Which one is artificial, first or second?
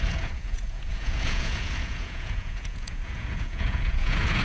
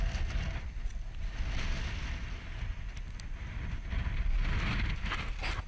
first